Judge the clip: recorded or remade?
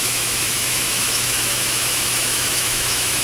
remade